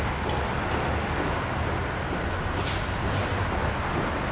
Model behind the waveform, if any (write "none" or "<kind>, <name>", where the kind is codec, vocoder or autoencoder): none